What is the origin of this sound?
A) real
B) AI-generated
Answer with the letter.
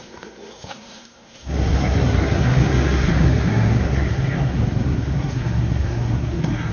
B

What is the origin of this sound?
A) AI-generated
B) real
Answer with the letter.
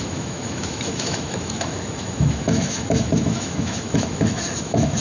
A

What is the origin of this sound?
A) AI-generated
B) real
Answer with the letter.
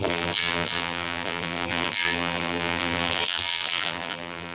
A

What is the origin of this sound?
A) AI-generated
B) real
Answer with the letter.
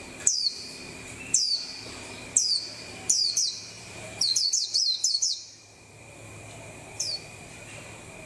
A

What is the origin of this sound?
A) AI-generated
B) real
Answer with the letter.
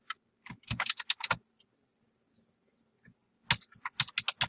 B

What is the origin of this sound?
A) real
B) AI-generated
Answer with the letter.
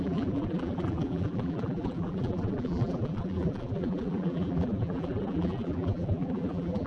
B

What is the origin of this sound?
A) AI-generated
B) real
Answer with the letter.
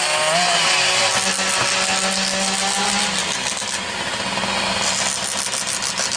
B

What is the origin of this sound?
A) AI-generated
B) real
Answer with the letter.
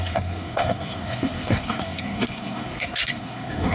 A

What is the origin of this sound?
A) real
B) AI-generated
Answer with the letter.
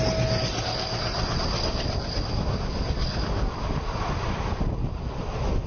A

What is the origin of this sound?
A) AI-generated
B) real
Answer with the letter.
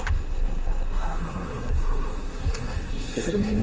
A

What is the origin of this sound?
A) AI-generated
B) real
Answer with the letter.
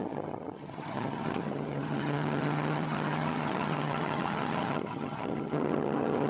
A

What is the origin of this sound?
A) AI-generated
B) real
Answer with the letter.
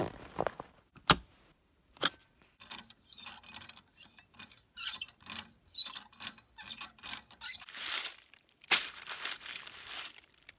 A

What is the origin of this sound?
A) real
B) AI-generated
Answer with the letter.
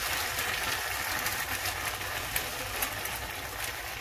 A